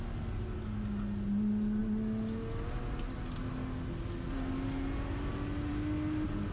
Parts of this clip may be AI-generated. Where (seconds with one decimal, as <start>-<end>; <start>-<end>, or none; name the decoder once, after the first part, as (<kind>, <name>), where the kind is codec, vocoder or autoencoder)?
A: none